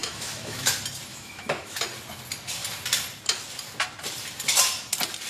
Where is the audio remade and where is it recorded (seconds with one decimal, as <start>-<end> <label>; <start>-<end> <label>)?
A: 0.0-0.7 remade; 0.7-1.1 recorded; 1.1-1.8 remade; 1.8-5.3 recorded